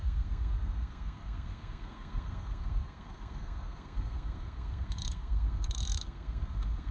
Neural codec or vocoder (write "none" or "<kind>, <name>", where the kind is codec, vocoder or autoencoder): codec, SNAC